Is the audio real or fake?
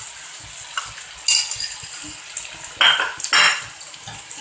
real